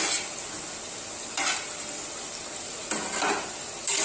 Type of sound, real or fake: real